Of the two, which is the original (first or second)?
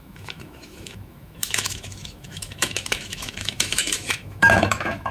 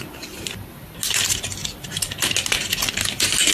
second